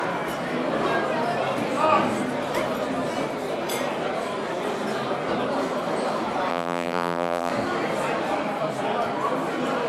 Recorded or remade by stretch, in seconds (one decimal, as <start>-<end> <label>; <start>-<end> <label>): 0.0-6.5 recorded; 6.5-7.5 remade; 7.5-9.9 recorded